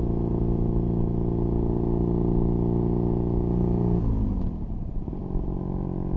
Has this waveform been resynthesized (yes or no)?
no